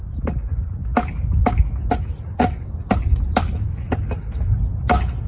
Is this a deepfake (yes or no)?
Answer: no